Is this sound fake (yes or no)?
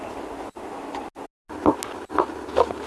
no